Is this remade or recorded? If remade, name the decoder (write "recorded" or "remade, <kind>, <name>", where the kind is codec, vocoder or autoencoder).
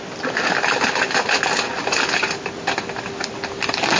recorded